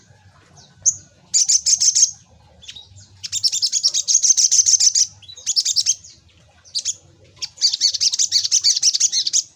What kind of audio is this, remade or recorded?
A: recorded